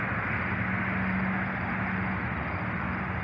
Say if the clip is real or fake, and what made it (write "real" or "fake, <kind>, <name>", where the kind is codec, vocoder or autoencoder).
real